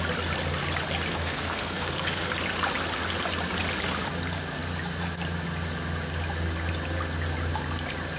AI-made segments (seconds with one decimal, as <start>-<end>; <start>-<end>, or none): 1.1-2.3